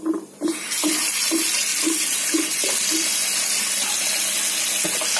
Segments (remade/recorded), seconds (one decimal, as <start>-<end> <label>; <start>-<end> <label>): 0.0-5.2 recorded